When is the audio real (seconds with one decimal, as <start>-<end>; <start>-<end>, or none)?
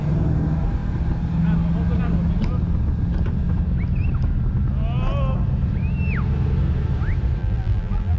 0.0-7.4